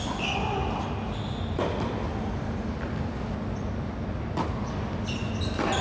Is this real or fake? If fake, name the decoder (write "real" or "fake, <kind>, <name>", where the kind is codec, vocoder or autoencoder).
real